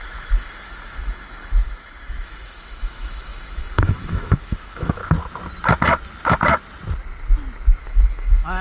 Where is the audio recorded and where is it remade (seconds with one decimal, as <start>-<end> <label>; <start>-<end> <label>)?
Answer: 0.0-5.0 remade; 5.0-7.8 recorded; 7.8-8.6 remade